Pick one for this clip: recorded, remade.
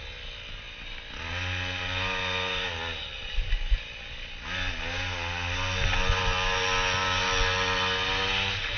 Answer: recorded